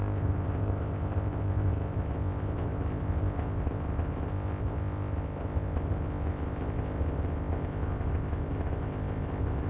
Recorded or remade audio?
remade